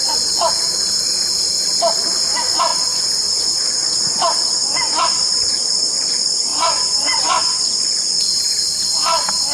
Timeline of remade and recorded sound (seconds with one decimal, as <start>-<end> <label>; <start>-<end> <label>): 0.0-2.7 recorded; 2.7-3.6 remade; 3.6-6.5 recorded; 6.5-7.6 remade; 7.6-9.5 recorded